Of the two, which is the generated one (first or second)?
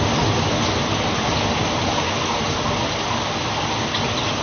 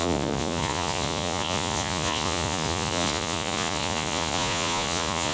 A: second